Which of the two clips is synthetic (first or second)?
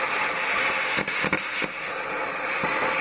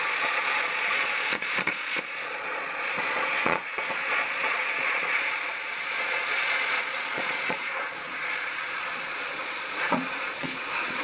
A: second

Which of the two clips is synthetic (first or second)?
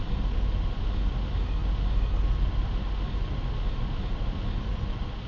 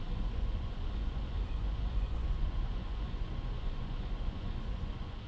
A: second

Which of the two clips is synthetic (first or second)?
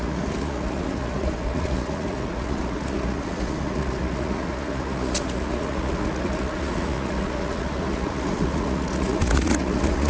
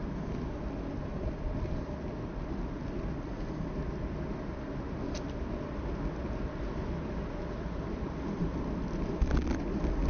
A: first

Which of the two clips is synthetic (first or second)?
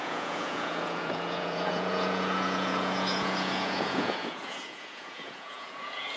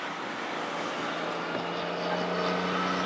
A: first